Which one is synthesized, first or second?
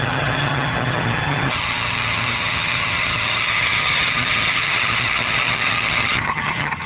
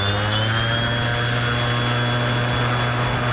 first